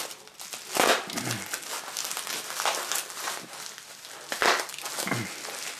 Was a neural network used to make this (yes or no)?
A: no